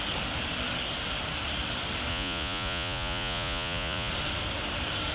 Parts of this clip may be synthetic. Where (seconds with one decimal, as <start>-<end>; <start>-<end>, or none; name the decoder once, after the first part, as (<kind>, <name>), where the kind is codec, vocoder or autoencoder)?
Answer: 2.1-4.1 (vocoder, Vocos)